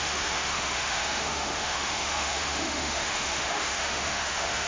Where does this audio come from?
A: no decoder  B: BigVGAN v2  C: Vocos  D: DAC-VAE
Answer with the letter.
D